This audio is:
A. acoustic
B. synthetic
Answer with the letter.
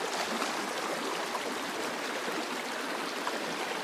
A